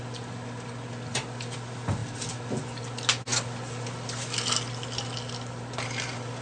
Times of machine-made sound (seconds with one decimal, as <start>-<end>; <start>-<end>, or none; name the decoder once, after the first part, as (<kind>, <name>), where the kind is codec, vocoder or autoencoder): none